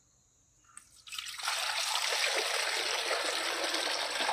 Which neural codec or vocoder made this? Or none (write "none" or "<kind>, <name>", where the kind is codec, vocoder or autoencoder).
none